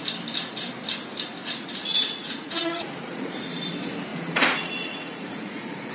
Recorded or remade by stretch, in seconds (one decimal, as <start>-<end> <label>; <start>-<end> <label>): 0.0-1.4 recorded; 1.4-3.6 remade; 3.6-4.1 recorded; 4.1-5.9 remade